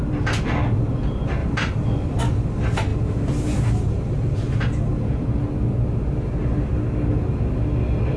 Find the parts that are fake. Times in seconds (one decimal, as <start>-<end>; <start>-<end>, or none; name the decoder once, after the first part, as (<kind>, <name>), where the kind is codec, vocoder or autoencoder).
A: 1.4-2.2 (vocoder, BigVGAN v2)